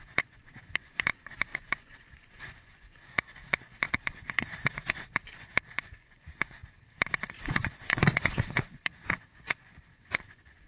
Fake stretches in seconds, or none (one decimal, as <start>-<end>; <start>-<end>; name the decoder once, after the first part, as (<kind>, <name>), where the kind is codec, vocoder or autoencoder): 0.0-6.6 (vocoder, Vocos); 7.3-10.7